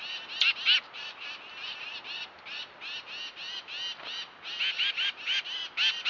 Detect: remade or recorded recorded